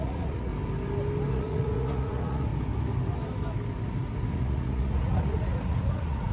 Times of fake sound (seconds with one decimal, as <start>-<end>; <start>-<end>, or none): 0.0-0.5; 1.3-2.5; 4.3-6.3

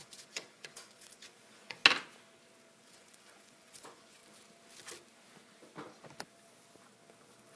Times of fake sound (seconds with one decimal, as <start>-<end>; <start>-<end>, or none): 0.0-1.8; 2.8-4.2

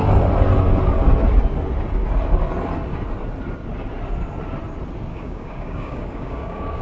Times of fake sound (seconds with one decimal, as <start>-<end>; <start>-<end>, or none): 5.1-6.8

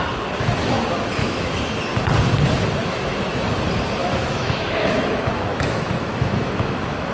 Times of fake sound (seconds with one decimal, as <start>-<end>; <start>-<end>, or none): 1.2-1.8; 2.8-3.4; 4.0-7.1

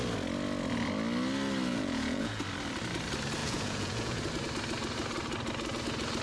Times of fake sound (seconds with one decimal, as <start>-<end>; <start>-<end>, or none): 1.7-2.4; 3.4-4.2

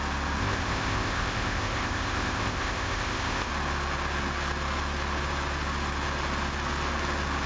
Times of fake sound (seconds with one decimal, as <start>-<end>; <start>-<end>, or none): 0.4-3.5

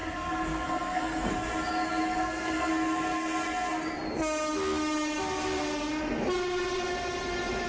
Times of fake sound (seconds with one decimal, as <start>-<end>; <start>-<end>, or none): 0.0-1.3; 2.2-2.7